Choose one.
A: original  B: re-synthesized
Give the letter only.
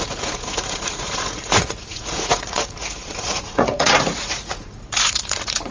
B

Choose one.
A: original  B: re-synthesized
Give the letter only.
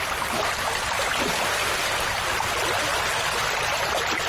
A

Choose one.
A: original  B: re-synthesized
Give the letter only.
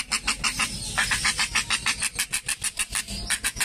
A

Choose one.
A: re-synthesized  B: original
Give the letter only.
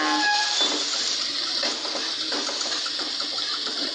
B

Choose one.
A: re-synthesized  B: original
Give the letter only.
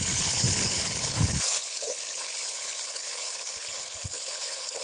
A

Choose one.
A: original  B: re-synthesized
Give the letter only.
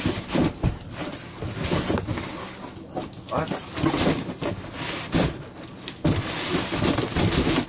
A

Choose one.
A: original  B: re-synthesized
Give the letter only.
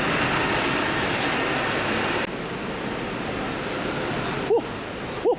A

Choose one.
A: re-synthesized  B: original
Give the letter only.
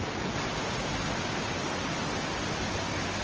B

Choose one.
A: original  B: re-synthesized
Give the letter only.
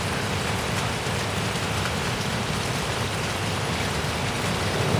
A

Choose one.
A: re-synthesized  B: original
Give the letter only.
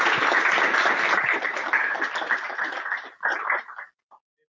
B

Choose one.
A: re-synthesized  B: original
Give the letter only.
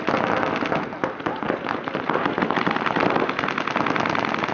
B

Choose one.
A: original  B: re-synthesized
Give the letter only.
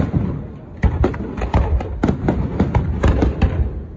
A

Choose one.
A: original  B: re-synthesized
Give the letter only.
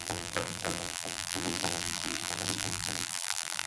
B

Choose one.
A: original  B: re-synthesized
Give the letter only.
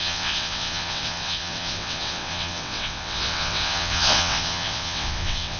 B